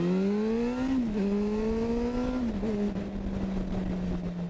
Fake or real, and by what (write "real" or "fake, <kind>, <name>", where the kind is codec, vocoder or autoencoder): real